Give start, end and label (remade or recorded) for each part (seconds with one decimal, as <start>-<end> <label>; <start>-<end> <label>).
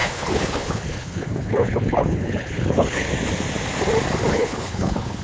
0.0-3.1 remade; 3.1-4.3 recorded; 4.3-5.2 remade